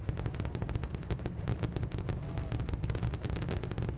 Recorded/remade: recorded